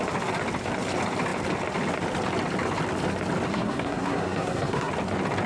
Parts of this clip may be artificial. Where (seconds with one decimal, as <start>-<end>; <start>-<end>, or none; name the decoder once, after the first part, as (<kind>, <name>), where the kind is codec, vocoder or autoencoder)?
3.5-4.9 (codec, SNAC)